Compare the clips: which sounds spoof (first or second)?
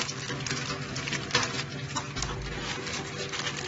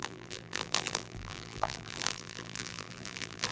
second